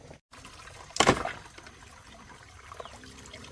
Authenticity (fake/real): real